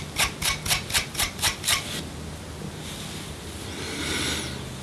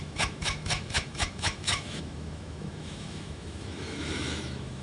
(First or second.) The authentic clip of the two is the first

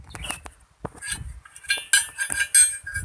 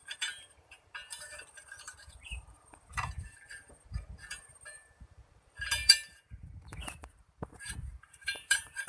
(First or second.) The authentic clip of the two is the first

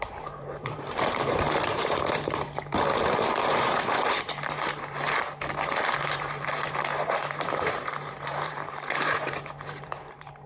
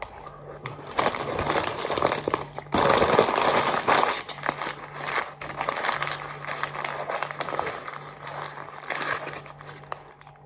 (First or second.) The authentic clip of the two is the second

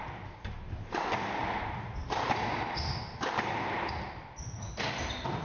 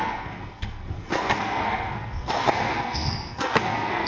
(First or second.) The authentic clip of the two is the first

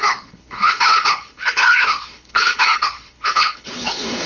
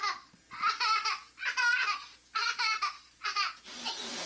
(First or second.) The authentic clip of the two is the second